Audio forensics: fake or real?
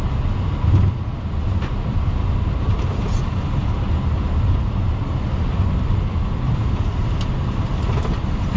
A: real